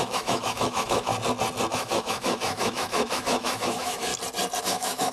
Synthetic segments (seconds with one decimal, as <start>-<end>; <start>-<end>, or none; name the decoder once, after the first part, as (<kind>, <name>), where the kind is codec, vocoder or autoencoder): 0.0-1.1 (autoencoder, DAC-VAE); 1.7-4.1; 4.6-5.1